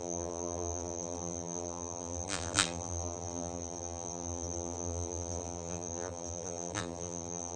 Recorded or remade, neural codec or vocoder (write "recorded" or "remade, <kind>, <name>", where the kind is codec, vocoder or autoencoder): remade, vocoder, BigVGAN v2